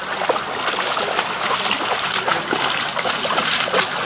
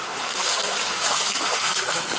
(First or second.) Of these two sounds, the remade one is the second